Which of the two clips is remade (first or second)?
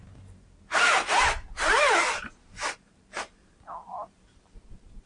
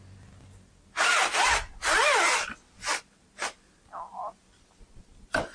first